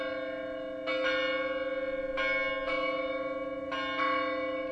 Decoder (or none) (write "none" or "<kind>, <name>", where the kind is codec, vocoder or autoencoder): none